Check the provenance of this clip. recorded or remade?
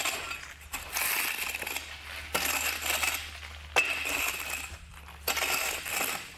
recorded